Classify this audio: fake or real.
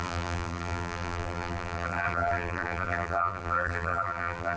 fake